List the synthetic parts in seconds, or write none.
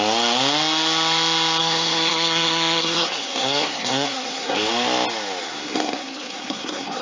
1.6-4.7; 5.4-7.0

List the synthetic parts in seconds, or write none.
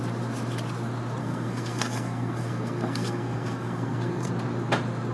1.2-4.3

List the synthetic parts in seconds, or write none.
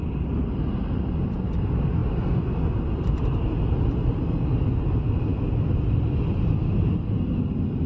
none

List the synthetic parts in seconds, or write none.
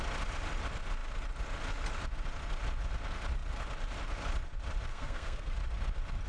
4.9-5.5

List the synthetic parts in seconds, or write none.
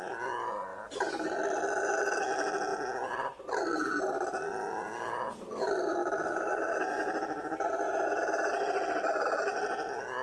none